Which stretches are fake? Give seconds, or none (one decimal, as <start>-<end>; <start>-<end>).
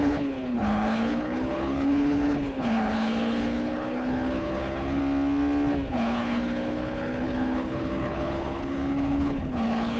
0.0-5.0; 5.9-10.0